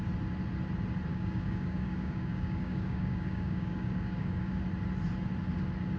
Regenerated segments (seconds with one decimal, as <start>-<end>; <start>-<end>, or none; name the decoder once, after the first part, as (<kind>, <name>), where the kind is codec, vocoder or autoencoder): 1.1-4.6 (codec, DAC)